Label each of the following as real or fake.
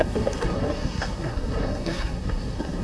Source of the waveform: fake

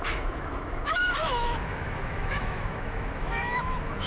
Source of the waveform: fake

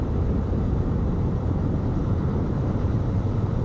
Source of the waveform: fake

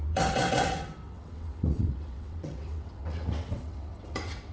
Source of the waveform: fake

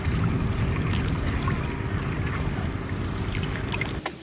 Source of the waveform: real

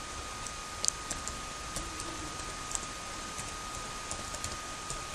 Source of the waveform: real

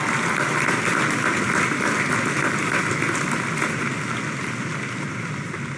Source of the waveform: real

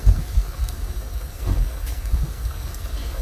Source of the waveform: fake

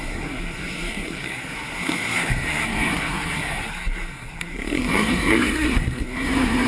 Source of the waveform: fake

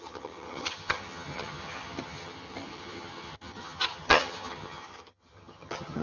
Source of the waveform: fake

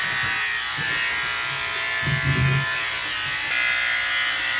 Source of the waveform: real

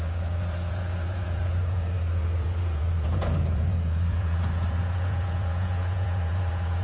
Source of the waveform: fake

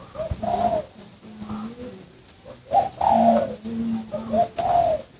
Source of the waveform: real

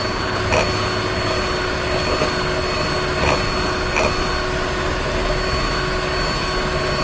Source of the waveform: real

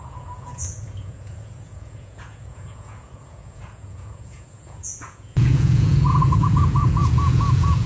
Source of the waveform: fake